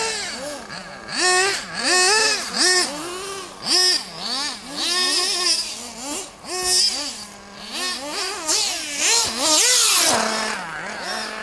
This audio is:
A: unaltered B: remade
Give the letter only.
A